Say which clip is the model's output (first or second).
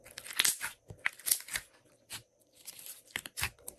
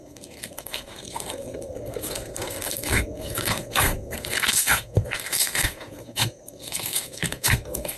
second